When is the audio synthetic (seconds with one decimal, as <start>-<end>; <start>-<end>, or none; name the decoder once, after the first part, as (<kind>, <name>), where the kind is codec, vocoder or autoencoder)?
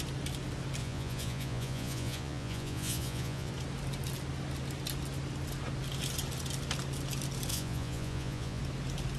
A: 0.8-3.5 (vocoder, Vocos); 7.5-8.6